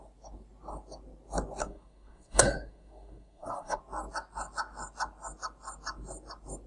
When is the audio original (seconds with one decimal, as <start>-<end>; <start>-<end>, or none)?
0.0-1.6; 3.8-6.7